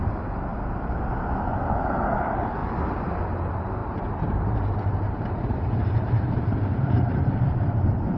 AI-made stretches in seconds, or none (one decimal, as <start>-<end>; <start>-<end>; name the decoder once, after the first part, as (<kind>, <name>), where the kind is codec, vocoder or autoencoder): 0.0-0.5 (vocoder, BigVGAN v2); 1.8-2.6; 3.3-8.2